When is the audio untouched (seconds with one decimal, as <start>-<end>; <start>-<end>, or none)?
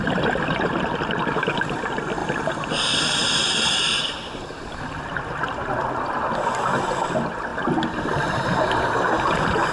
1.5-2.2; 2.8-9.7